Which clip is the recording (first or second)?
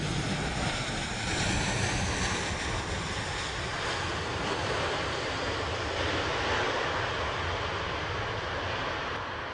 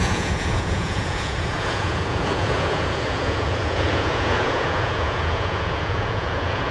first